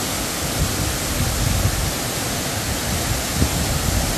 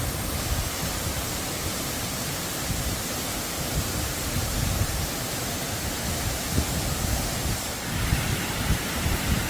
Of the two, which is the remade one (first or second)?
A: second